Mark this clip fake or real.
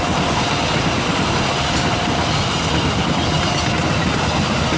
real